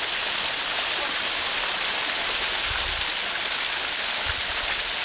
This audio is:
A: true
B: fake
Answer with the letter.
A